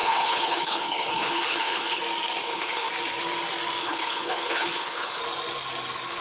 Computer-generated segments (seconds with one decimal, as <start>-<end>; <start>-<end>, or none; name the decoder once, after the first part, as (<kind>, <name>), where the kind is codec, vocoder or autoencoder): 0.0-2.0 (codec, HILCodec); 2.4-2.9; 3.8-5.2